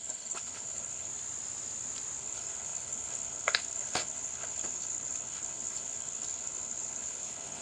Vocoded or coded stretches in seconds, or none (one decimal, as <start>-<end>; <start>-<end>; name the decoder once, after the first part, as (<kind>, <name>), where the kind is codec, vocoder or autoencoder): 0.0-1.1 (codec, HILCodec); 2.2-7.6